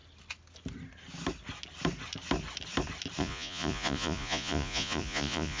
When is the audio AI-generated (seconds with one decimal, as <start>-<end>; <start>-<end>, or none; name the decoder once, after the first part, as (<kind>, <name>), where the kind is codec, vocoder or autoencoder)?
3.2-5.6 (vocoder, Vocos)